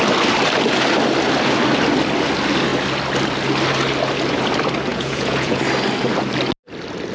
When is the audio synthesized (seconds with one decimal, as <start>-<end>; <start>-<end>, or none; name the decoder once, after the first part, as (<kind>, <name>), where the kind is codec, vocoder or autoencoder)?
4.9-5.6 (vocoder, Vocos)